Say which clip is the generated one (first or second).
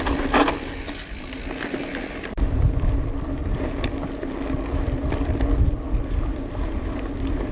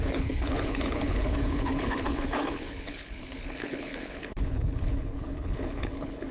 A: second